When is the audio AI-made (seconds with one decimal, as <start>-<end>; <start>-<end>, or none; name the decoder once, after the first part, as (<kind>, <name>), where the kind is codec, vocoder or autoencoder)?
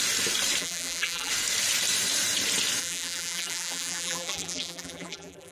0.6-1.3 (vocoder, BigVGAN v2); 2.8-5.5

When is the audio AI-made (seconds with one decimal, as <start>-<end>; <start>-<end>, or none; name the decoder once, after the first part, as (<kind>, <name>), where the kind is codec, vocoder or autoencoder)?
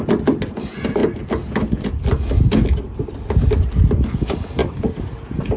none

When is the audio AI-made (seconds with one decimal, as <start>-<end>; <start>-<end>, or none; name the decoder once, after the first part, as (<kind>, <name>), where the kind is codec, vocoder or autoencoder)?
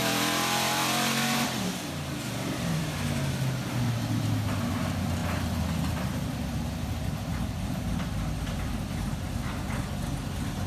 0.0-2.8 (vocoder, BigVGAN v2); 7.3-9.2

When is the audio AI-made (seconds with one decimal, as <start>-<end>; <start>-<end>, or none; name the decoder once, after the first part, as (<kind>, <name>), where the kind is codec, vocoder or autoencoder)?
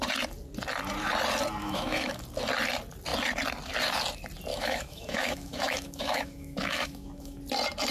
1.6-2.2 (autoencoder, DAC-VAE); 4.5-7.4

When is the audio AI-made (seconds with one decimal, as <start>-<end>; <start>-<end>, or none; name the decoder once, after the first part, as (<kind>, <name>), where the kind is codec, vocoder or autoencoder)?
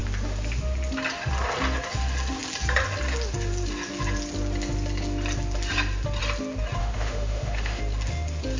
6.8-7.8 (autoencoder, DAC-VAE)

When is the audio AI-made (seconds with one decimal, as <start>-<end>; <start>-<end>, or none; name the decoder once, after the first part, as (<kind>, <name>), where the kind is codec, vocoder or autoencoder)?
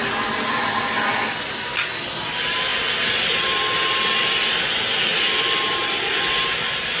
none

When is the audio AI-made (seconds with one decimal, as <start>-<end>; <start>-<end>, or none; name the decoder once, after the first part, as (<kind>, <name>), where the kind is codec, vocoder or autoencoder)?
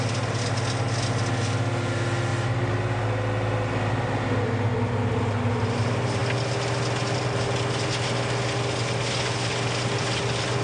none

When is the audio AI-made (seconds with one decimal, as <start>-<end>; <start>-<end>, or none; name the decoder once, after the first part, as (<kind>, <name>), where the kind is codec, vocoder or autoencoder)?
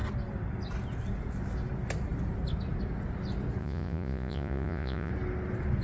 3.6-5.1 (vocoder, Vocos)